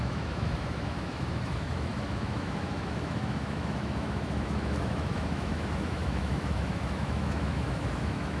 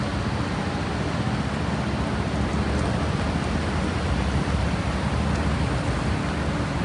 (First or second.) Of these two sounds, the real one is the second